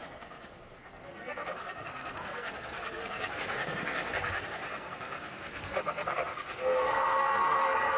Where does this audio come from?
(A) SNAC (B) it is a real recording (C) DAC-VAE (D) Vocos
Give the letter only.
A